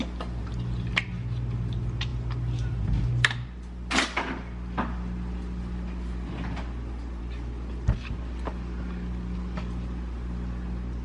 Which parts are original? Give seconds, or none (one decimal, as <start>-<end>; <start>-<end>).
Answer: 0.0-11.0